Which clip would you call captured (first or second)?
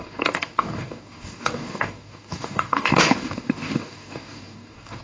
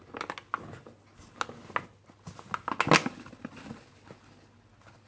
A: second